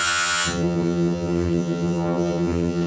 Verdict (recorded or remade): remade